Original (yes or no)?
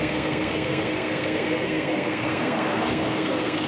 no